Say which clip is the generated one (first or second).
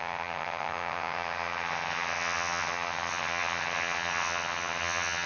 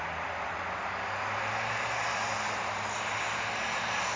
first